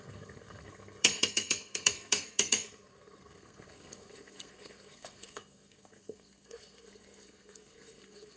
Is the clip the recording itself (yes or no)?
no